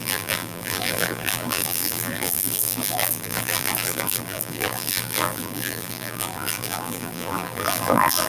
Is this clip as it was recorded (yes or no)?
no